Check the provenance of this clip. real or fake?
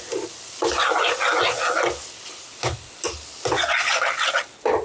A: real